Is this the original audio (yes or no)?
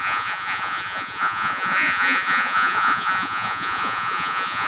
no